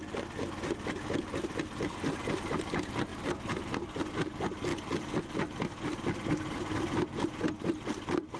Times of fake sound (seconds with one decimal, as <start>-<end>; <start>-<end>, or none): none